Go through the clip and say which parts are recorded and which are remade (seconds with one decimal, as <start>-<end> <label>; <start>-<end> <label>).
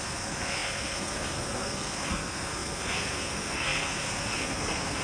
0.0-5.0 remade